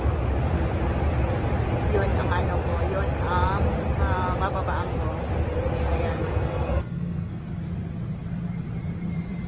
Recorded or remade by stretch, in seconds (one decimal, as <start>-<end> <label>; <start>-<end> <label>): 0.0-6.2 recorded; 6.2-7.4 remade; 7.4-9.5 recorded